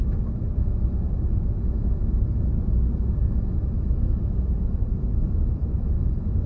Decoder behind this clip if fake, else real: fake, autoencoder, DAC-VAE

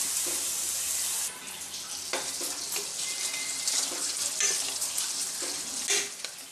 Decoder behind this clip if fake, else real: real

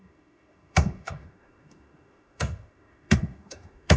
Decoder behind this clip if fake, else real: fake, autoencoder, DAC-VAE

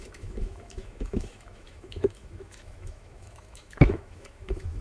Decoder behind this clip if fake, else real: fake, autoencoder, DAC-VAE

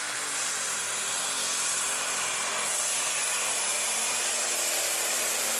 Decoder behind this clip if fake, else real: real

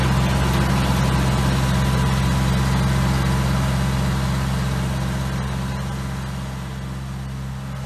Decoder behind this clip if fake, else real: real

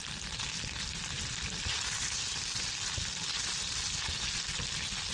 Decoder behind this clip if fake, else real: real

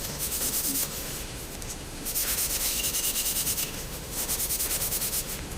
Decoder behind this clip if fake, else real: fake, autoencoder, DAC-VAE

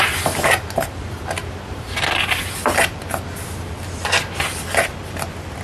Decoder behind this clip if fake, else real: real